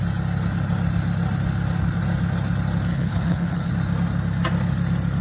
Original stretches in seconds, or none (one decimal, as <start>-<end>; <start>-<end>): 0.0-2.9; 3.7-5.2